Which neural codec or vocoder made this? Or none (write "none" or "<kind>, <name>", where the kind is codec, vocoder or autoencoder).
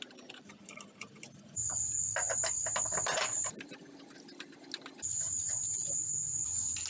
none